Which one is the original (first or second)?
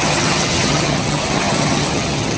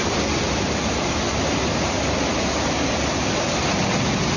second